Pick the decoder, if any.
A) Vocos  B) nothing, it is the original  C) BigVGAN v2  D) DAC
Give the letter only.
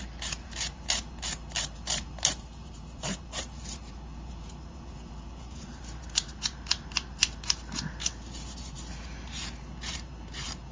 C